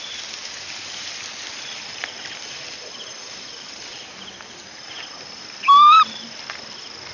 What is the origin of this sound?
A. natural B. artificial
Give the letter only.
A